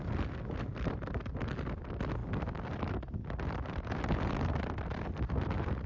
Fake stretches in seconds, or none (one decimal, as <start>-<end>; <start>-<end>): 0.0-5.9